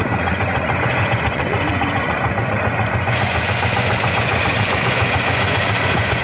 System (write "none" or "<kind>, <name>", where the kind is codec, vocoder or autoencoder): vocoder, Vocos